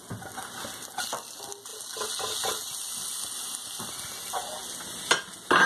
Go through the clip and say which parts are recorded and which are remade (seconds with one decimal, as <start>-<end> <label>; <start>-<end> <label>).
0.0-5.7 recorded